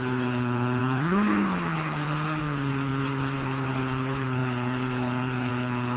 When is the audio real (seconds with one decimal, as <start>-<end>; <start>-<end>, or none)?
none